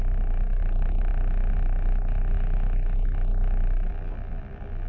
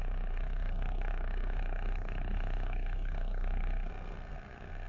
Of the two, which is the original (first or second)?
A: first